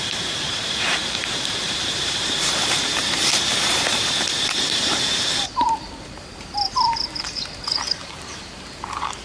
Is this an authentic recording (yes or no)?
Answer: no